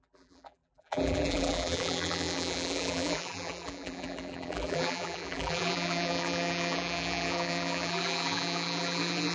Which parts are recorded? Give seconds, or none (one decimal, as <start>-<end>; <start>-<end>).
none